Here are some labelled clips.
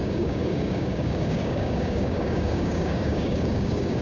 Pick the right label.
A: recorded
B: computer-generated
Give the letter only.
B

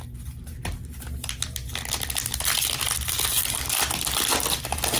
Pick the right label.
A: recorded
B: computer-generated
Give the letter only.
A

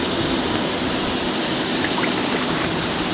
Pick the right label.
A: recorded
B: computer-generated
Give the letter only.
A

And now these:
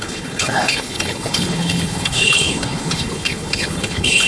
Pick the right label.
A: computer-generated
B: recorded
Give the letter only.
A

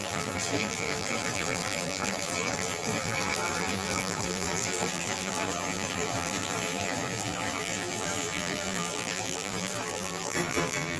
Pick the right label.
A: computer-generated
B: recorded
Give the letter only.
A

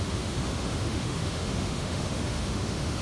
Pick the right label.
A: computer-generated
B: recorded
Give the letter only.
A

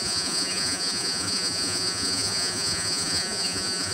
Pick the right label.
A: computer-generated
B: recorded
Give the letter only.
A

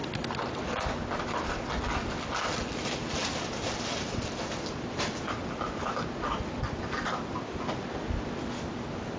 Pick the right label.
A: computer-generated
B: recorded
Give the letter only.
B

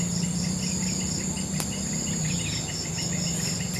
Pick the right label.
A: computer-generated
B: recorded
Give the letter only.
B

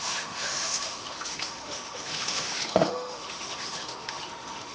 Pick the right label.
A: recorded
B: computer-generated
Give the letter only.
B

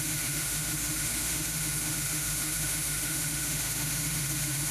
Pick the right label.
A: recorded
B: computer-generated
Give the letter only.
B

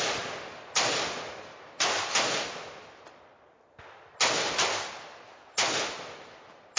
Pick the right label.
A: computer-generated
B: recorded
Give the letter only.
B